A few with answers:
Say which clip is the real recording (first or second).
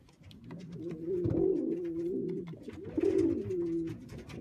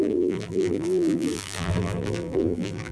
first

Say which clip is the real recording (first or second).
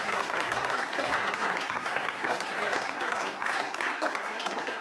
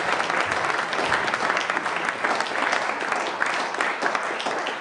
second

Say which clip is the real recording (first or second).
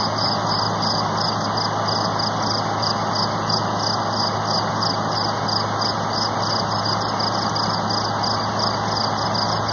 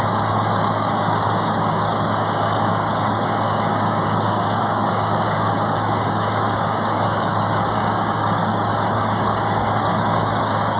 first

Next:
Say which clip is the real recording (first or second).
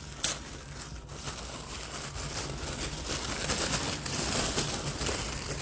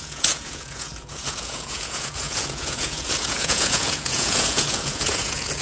first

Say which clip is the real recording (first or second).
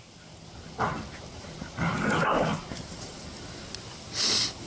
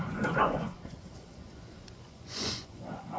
first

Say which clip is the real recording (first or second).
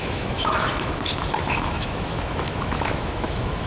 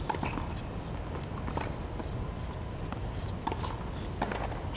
second